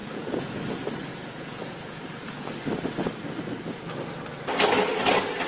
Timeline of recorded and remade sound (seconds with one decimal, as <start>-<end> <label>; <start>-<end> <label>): 0.0-0.6 remade; 0.6-1.1 recorded; 1.1-2.5 remade; 2.5-5.5 recorded